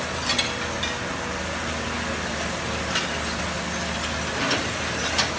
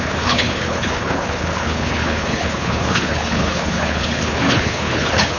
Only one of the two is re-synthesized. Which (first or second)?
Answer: second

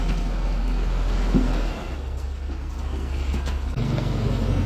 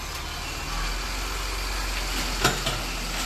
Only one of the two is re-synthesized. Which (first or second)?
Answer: first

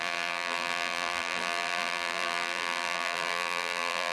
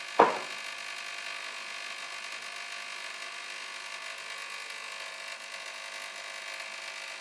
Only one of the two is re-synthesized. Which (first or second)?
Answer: first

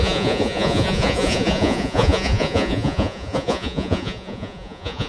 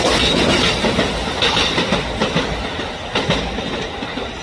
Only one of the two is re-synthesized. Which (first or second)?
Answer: first